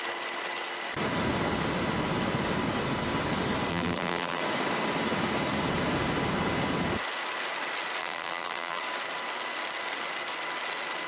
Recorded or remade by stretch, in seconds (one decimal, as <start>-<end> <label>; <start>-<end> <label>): 0.0-3.7 recorded; 3.7-4.4 remade; 4.4-8.0 recorded; 8.0-8.8 remade; 8.8-11.1 recorded